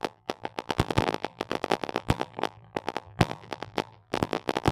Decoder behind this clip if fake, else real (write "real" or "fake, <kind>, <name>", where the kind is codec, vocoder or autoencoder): fake, vocoder, BigVGAN v2